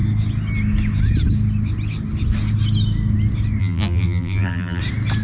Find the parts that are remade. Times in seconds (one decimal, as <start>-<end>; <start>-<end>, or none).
3.6-4.8

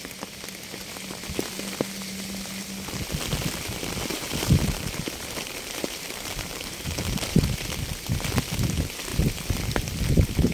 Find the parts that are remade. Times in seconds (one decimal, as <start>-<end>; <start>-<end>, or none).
4.1-7.4

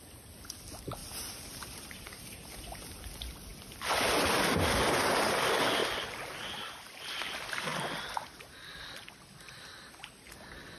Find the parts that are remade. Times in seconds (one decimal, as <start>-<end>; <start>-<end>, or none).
1.0-3.1

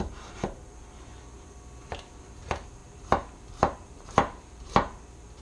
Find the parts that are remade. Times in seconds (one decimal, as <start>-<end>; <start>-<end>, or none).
0.0-1.1; 2.2-5.4

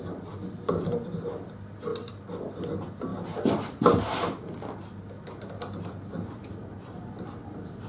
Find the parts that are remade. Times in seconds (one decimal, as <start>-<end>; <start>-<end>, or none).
3.1-4.7

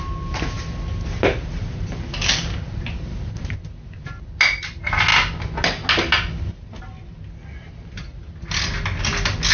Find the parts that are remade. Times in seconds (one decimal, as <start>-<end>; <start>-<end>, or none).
1.6-3.6

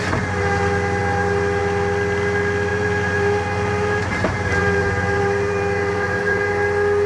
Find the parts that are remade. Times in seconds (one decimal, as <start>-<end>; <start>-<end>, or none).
2.7-6.5

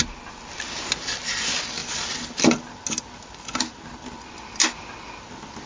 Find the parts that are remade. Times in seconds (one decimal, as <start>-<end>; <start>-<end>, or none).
none